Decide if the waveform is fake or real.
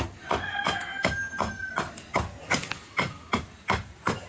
real